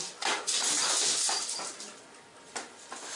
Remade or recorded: recorded